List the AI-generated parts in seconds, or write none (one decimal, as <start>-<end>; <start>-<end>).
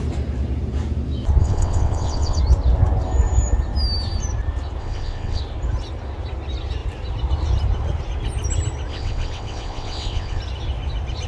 1.4-2.4; 4.8-5.4; 8.9-10.4